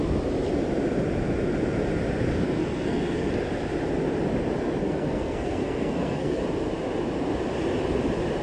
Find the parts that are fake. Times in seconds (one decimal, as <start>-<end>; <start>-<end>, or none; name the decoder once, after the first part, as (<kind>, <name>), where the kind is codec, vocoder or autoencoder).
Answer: 2.6-3.3 (codec, SNAC); 4.8-6.4